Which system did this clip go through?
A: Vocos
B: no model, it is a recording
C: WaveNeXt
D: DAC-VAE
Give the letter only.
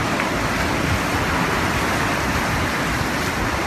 B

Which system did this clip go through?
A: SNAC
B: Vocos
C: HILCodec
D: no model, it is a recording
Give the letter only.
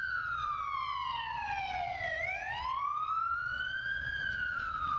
B